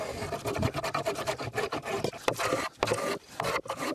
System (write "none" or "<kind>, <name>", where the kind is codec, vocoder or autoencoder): none